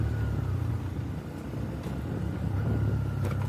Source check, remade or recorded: recorded